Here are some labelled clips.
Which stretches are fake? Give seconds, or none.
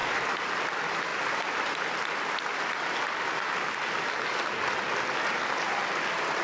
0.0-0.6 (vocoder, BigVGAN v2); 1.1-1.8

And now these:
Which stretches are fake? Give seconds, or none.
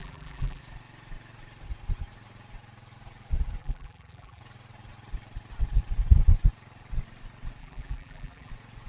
0.0-0.6 (vocoder, BigVGAN v2); 3.6-4.4; 7.6-8.5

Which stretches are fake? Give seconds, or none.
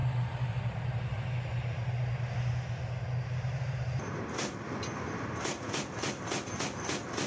0.0-0.6 (vocoder, BigVGAN v2)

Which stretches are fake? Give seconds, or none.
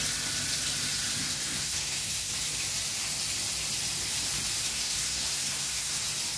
1.2-2.3 (codec, SNAC); 4.6-6.0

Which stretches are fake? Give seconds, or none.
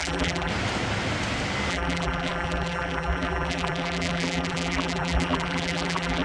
0.0-0.5 (vocoder, BigVGAN v2); 1.7-6.2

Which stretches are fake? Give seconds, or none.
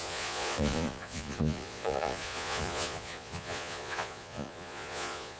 0.0-5.4 (vocoder, Vocos)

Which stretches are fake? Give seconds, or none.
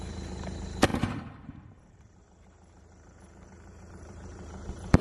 0.0-5.0 (vocoder, BigVGAN v2)